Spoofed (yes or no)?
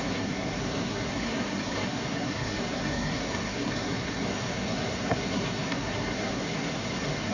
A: yes